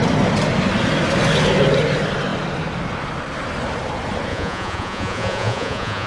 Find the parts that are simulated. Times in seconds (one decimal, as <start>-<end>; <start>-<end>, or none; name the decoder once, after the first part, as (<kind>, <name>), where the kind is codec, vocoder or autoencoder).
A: 4.3-6.1 (vocoder, Vocos)